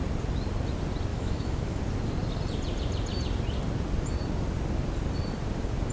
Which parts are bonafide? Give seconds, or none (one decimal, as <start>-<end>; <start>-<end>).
0.0-1.1; 1.8-5.9